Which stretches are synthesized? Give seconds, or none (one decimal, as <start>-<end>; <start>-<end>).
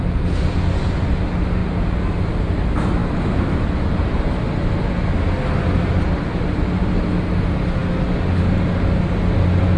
none